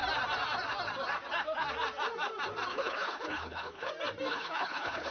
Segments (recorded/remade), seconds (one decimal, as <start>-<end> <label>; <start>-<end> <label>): 0.0-2.7 recorded; 2.7-3.9 remade; 3.9-4.3 recorded; 4.3-5.1 remade